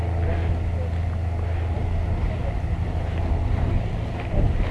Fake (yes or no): no